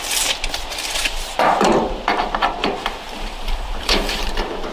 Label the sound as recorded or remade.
remade